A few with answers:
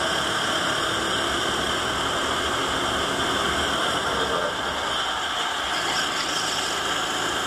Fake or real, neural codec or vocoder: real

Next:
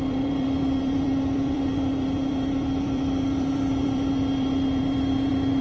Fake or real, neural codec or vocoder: fake, vocoder, BigVGAN v2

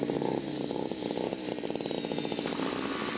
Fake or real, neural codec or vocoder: real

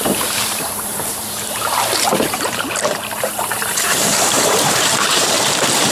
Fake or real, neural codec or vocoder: fake, vocoder, BigVGAN v2